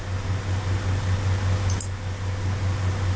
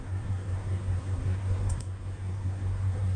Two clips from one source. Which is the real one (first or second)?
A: first